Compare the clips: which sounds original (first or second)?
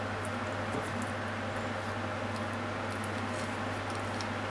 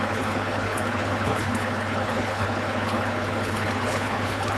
first